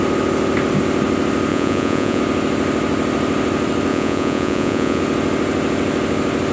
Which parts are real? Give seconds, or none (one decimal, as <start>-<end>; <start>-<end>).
0.0-1.5; 2.2-3.9; 5.0-6.5